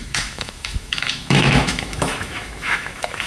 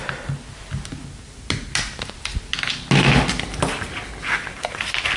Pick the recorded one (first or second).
second